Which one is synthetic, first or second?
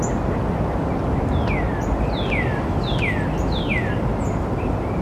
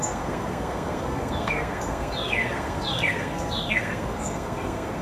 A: second